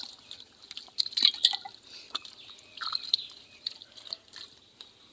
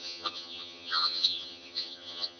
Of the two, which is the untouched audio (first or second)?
first